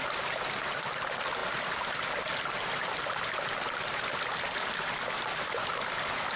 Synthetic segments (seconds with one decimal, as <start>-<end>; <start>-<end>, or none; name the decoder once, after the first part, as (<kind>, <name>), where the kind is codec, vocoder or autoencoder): none